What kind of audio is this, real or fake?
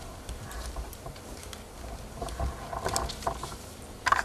real